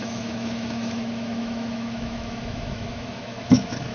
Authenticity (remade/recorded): remade